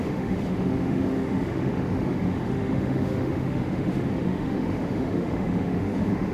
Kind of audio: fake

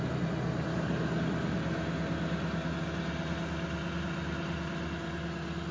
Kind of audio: real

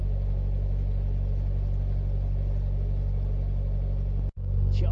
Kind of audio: real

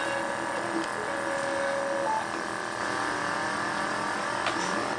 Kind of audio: real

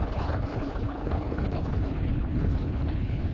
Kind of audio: fake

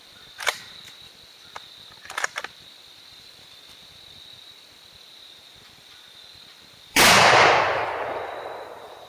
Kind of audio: fake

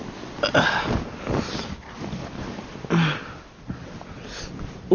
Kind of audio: real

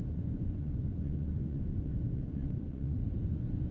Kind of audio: fake